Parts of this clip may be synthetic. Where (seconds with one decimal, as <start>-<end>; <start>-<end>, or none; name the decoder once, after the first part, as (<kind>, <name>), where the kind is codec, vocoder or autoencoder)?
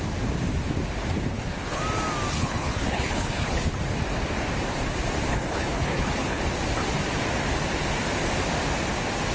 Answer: 1.3-1.8 (codec, HILCodec); 2.3-3.8; 5.3-6.4